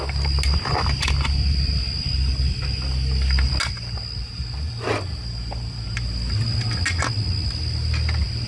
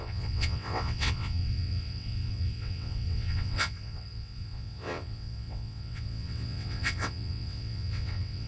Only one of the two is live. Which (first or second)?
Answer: first